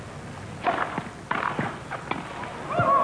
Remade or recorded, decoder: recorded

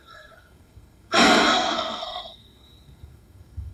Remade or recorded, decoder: remade, codec, SNAC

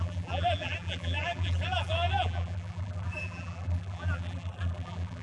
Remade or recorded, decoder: remade, vocoder, BigVGAN v2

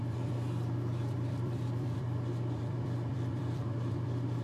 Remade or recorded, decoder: remade, vocoder, BigVGAN v2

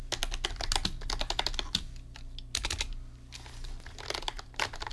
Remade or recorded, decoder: recorded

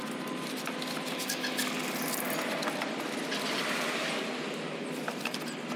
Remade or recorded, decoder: recorded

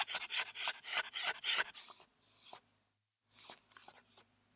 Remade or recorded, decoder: recorded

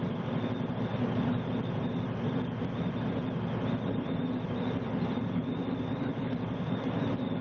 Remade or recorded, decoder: recorded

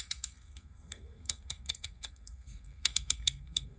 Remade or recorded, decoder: remade, codec, SNAC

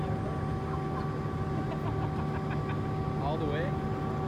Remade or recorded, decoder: recorded